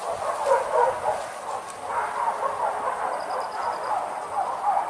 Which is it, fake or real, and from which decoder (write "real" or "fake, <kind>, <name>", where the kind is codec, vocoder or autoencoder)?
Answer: real